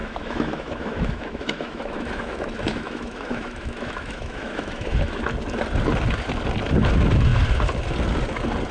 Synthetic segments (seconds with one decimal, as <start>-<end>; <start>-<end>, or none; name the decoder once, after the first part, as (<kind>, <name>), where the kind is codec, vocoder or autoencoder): 0.0-5.2 (autoencoder, DAC-VAE)